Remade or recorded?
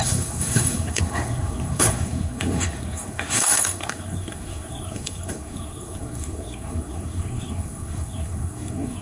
remade